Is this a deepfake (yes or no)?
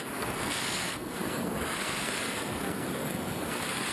yes